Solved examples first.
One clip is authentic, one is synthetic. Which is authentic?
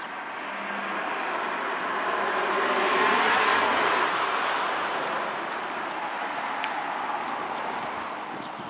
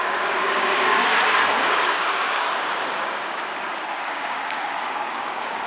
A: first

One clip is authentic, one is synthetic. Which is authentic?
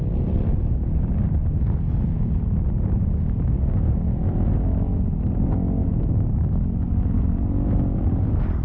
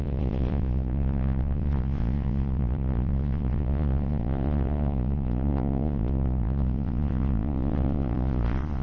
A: first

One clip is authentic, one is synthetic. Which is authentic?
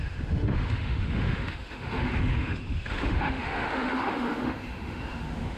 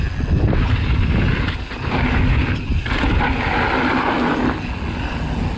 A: second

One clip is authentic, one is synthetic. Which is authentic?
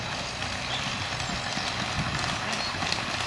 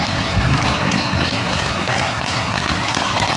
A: first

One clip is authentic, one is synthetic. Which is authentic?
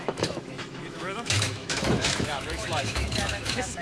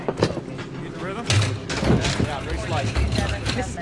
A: second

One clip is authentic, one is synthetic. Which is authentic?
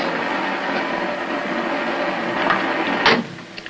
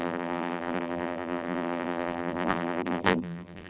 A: first